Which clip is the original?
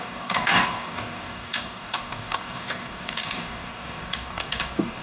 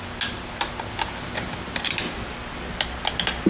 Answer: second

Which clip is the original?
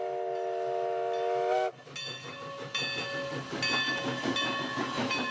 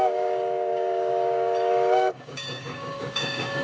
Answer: first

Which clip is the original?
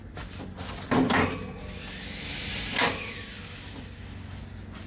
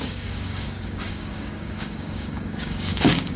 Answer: first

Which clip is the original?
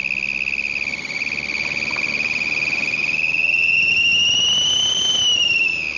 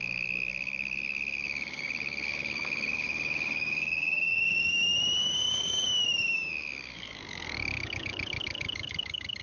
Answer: first